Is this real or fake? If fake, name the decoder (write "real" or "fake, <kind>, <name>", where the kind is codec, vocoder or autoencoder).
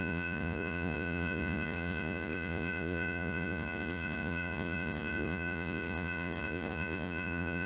fake, vocoder, Vocos